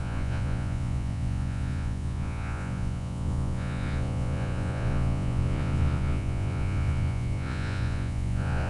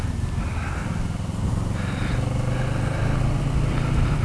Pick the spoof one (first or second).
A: first